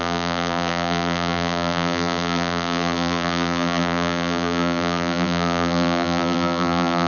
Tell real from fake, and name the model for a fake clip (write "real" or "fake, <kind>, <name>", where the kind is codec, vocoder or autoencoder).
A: fake, vocoder, BigVGAN v2